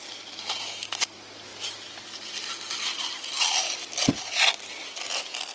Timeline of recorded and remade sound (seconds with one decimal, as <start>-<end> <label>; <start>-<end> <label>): 0.0-5.5 recorded